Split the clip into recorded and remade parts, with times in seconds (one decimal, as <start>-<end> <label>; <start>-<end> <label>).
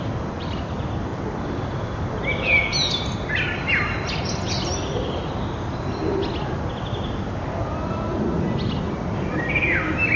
0.0-10.2 recorded